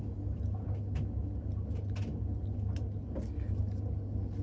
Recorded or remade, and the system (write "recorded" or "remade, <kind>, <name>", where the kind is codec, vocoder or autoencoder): recorded